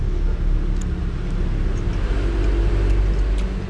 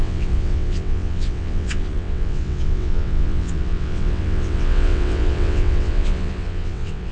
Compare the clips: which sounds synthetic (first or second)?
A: second